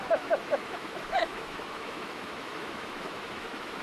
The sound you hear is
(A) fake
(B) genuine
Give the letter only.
A